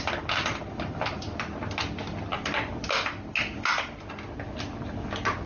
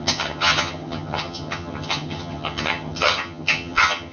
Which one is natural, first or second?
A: first